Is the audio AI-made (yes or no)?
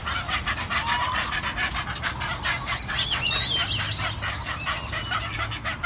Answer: no